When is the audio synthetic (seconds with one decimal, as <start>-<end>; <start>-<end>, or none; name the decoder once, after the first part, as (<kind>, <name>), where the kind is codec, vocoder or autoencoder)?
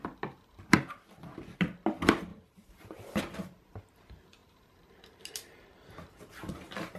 2.3-3.2 (vocoder, BigVGAN v2); 4.4-6.3